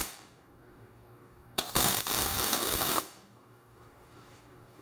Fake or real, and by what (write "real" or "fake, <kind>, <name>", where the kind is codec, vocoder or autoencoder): fake, codec, DAC